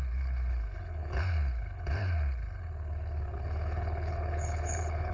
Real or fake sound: fake